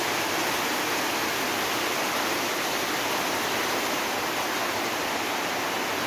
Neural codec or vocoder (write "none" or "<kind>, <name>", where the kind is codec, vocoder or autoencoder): none